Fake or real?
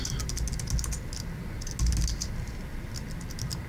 real